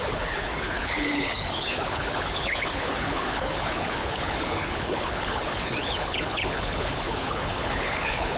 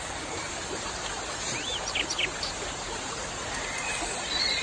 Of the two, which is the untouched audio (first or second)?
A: second